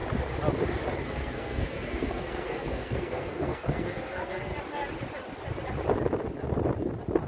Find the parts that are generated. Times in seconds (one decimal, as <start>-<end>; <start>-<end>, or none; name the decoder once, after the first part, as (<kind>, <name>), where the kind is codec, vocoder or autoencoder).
1.0-4.5 (codec, SNAC)